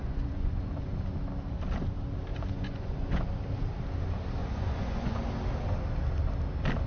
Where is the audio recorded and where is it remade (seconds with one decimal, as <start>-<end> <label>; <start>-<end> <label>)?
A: 0.0-0.9 remade; 0.9-2.3 recorded; 2.3-3.2 remade; 3.2-4.4 recorded; 4.4-5.2 remade; 5.2-6.9 recorded